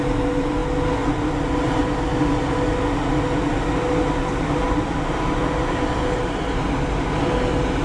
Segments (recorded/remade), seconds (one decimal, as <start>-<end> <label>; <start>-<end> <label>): 0.0-7.8 recorded